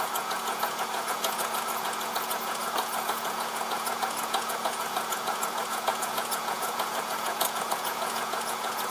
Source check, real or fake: fake